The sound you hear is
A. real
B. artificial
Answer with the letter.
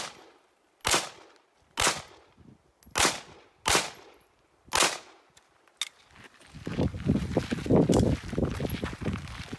A